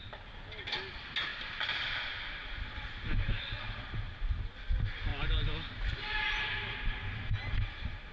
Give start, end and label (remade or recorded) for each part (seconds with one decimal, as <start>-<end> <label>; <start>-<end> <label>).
0.0-8.1 recorded